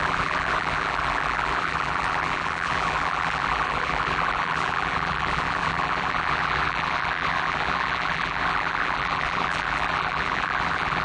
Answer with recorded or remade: remade